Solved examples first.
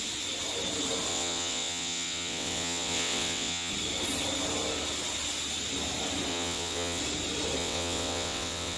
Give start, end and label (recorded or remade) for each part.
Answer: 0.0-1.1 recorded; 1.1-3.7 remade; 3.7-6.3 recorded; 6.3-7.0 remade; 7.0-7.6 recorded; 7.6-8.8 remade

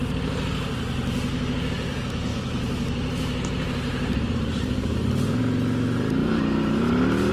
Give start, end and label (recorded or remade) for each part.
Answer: 0.0-2.3 recorded; 2.3-5.4 remade; 5.4-6.2 recorded; 6.2-7.3 remade

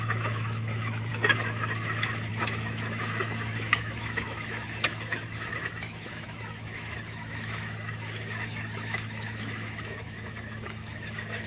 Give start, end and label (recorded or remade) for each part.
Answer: 0.0-11.5 remade

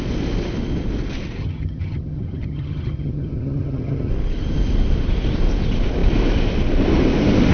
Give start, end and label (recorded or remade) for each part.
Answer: 0.0-1.4 recorded; 1.4-4.1 remade; 4.1-7.5 recorded